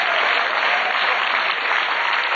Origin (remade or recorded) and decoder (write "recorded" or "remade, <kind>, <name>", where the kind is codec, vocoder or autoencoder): recorded